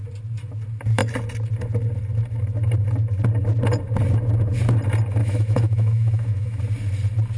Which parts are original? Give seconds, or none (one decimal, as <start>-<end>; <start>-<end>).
0.0-5.2; 6.6-7.4